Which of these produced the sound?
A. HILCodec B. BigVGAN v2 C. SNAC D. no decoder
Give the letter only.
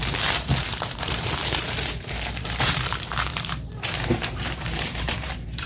B